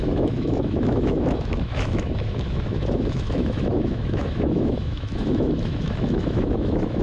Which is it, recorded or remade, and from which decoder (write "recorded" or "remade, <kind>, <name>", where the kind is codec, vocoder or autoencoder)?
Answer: remade, autoencoder, DAC-VAE